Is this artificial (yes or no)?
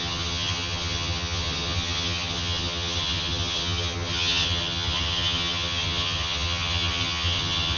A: yes